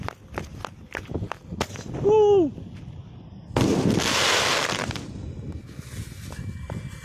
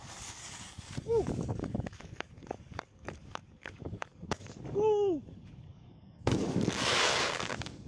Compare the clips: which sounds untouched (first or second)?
first